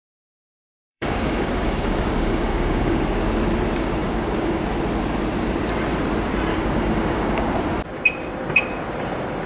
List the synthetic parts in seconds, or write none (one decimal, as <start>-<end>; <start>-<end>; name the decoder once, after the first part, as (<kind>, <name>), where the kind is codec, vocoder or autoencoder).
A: 0.6-3.0 (codec, DAC); 4.0-4.6; 6.5-7.5